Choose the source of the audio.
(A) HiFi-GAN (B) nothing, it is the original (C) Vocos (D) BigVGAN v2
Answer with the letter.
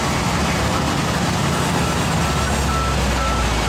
B